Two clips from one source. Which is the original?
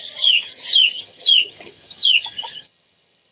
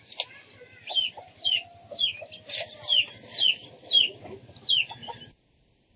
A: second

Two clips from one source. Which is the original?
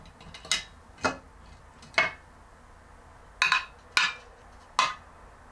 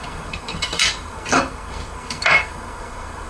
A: first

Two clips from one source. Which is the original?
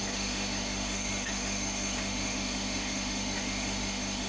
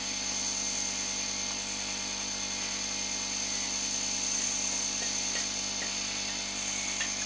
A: second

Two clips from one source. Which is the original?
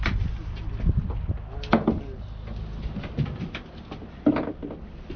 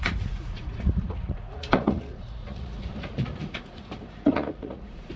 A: first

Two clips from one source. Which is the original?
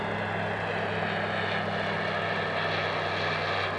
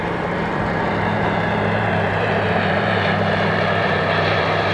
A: first